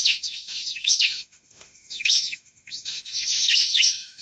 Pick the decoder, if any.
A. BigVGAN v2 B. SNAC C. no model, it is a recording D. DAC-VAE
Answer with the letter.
D